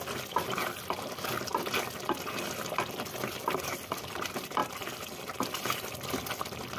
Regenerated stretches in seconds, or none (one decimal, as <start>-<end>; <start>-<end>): 0.0-1.5; 3.3-4.6; 5.4-6.8